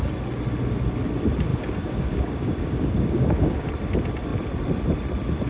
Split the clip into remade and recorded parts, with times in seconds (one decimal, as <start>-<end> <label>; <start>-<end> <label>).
0.0-1.5 recorded; 1.5-3.7 remade; 3.7-5.5 recorded